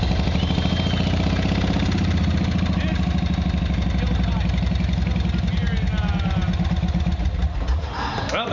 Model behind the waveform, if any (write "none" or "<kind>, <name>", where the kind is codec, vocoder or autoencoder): none